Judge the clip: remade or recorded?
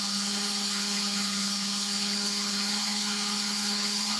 remade